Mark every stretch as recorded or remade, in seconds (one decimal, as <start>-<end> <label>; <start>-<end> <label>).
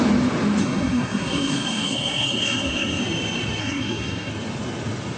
0.0-0.6 recorded; 0.6-3.0 remade; 3.0-3.6 recorded; 3.6-4.3 remade; 4.3-5.2 recorded